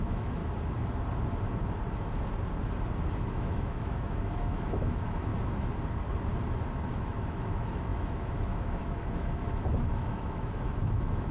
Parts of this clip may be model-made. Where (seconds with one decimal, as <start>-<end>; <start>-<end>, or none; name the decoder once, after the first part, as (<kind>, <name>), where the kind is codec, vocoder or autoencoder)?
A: 0.0-0.4 (autoencoder, DAC-VAE); 3.2-5.3; 6.9-11.3